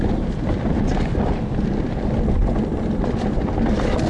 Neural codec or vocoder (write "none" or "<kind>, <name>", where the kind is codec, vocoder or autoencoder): none